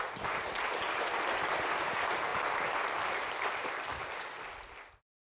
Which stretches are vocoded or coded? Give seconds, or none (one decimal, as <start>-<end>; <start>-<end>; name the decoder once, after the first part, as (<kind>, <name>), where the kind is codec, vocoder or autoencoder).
none